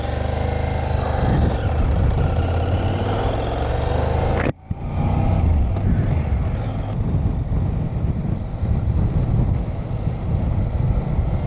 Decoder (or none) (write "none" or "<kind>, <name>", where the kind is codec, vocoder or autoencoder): none